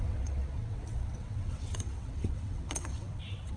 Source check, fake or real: fake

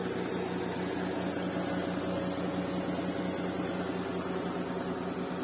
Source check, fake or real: real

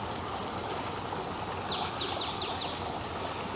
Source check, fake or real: real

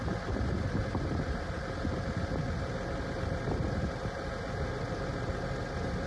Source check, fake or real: real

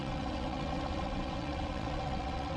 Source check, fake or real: fake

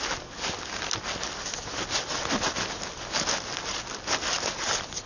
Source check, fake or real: real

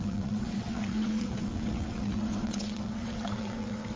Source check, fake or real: fake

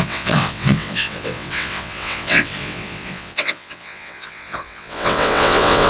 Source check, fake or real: fake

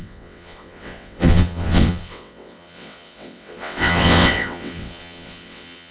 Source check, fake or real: fake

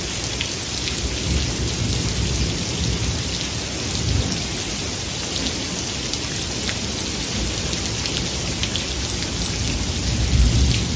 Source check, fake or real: real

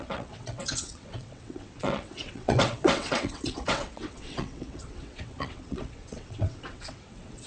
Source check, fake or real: fake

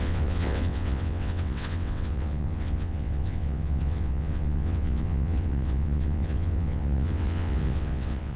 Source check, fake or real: fake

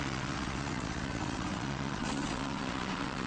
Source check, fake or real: fake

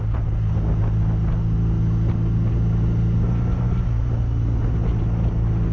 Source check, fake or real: real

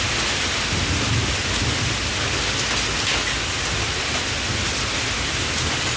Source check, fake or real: real